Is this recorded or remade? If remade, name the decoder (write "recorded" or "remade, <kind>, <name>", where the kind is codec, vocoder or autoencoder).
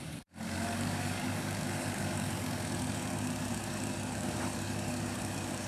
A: remade, codec, DAC